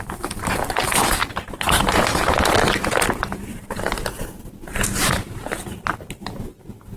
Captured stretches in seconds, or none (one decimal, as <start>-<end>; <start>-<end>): none